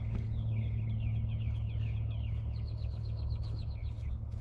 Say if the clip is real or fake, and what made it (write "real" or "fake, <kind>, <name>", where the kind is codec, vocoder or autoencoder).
fake, codec, HILCodec